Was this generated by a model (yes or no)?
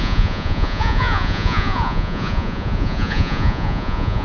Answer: yes